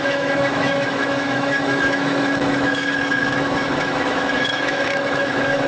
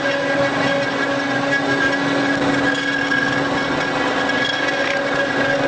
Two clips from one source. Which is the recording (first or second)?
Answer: second